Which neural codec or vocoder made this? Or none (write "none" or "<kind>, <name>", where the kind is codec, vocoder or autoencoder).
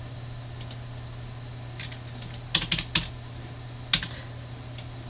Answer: none